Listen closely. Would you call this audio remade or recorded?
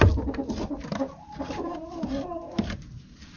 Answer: recorded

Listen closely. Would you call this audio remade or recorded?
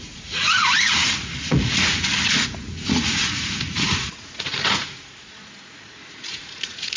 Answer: remade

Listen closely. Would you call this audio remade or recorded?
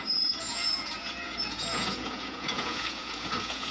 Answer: remade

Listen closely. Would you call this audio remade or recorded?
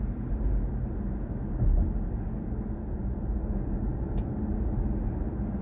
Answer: recorded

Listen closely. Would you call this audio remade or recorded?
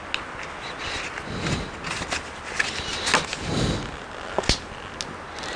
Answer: recorded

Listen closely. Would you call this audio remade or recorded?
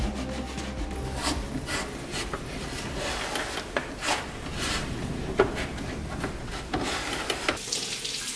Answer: recorded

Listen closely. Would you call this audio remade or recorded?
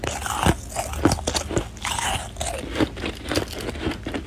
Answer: recorded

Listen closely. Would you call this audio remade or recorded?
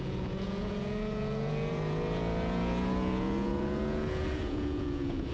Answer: remade